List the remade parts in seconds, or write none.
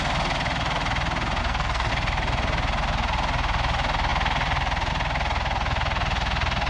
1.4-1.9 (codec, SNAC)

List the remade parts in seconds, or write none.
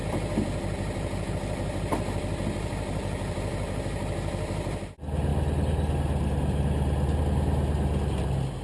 none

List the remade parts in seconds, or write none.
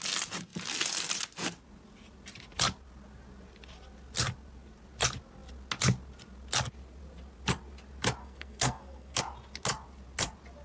8.2-9.2 (codec, SNAC)